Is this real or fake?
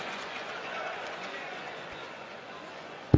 fake